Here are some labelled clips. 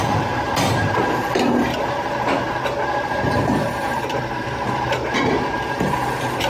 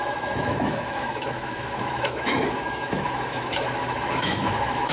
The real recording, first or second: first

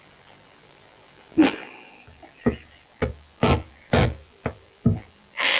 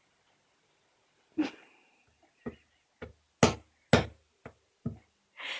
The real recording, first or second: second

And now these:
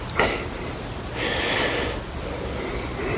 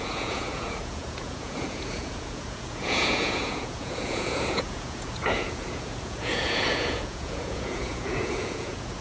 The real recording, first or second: first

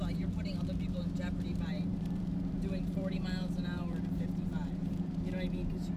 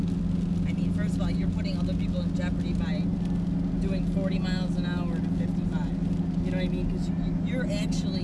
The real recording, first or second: second